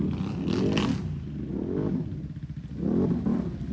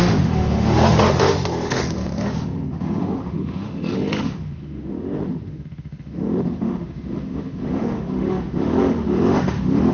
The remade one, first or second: second